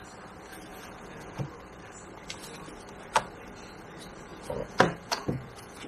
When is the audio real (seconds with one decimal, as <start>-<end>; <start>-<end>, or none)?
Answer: 0.0-0.7; 1.4-4.3